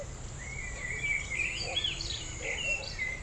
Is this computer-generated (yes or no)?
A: yes